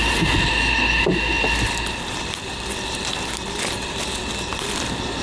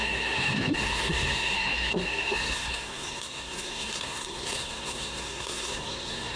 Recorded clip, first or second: first